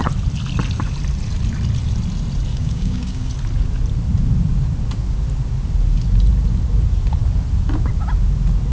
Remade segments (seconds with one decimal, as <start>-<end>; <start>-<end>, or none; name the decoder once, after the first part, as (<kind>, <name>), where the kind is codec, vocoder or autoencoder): 2.5-3.3 (codec, DAC)